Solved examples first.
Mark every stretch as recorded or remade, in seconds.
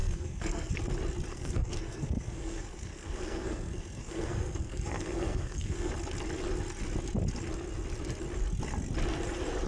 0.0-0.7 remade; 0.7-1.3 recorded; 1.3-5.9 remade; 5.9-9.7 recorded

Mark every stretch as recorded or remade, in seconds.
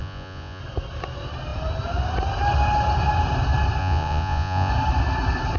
0.0-0.6 remade; 0.6-3.8 recorded; 3.8-4.7 remade; 4.7-5.6 recorded